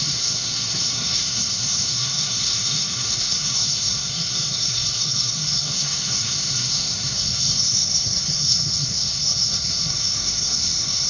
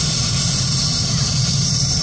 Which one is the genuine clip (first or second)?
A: second